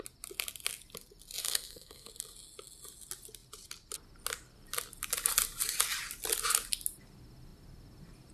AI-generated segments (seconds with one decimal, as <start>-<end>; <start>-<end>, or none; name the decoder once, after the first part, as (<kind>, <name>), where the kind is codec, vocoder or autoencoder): 1.4-2.1 (codec, SNAC)